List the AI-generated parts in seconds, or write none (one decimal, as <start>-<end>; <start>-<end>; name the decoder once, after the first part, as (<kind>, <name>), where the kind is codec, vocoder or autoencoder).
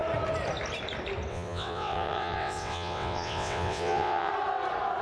1.3-4.3 (vocoder, WaveNeXt)